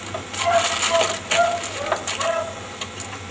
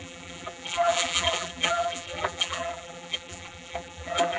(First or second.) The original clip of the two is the first